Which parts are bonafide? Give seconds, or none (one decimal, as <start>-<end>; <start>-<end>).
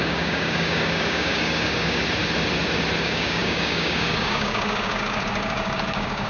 2.0-3.0